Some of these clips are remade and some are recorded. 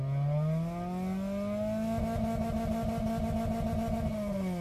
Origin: recorded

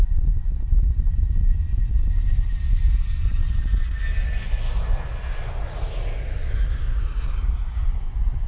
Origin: recorded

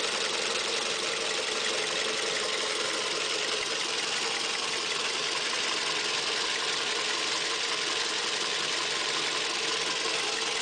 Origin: recorded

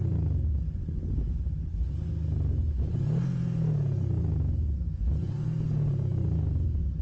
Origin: recorded